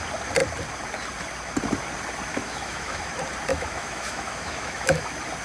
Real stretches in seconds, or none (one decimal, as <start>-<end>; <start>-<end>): 0.0-2.3; 3.1-3.5; 5.0-5.4